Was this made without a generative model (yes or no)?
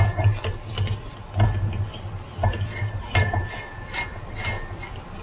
yes